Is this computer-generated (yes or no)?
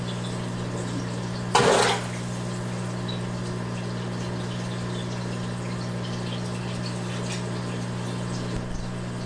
no